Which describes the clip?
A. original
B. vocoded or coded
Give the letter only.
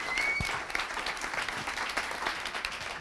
A